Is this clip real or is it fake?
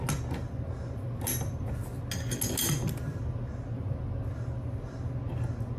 real